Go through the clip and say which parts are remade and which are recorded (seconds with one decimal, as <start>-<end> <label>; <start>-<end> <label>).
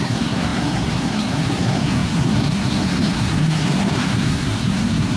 0.0-5.2 remade